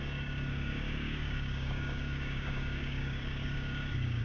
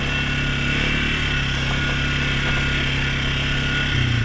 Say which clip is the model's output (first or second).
first